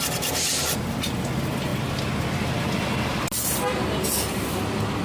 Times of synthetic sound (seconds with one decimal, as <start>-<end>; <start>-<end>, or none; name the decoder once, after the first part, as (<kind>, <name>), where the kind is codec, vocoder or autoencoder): none